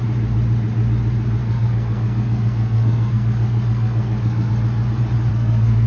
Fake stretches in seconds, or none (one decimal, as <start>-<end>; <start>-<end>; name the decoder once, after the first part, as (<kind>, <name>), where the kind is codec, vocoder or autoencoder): 1.4-4.5 (codec, SNAC); 5.3-5.9